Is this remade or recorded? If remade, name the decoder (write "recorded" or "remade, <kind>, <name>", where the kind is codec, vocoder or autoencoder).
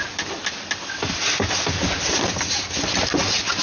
recorded